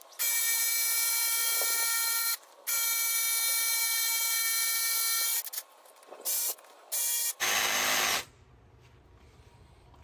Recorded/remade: recorded